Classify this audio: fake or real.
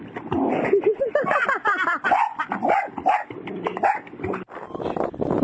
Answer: real